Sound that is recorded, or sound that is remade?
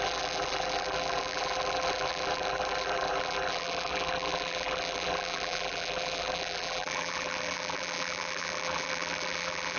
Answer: remade